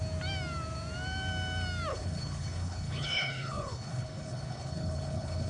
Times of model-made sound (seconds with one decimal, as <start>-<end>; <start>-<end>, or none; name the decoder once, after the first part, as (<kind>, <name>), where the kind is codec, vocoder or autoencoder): 1.9-5.5 (codec, HILCodec)